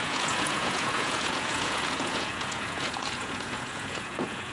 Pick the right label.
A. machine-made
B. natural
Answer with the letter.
A